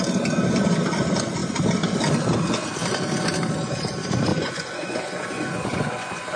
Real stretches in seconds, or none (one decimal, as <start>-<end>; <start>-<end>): 0.0-4.3